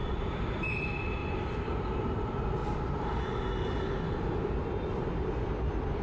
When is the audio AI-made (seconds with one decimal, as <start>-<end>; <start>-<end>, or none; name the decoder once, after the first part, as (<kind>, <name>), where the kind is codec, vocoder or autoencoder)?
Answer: 0.0-0.7 (vocoder, BigVGAN v2); 2.6-3.2